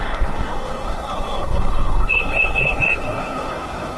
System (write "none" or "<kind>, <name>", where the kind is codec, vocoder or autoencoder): codec, SNAC